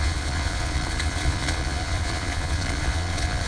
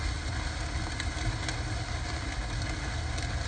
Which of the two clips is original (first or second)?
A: second